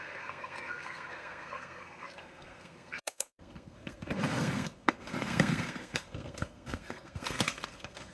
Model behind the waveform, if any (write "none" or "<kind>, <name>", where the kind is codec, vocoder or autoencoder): codec, SNAC